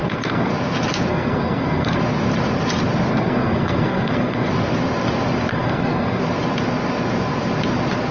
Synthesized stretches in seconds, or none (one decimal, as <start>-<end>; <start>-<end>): 0.0-0.5; 1.1-2.0; 3.1-4.5; 5.5-6.2